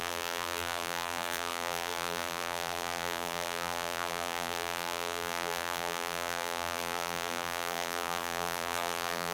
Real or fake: fake